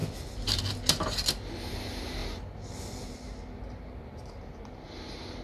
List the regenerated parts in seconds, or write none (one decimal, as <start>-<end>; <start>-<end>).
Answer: none